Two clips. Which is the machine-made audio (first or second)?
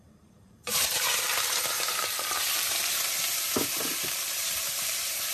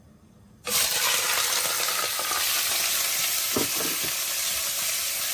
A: first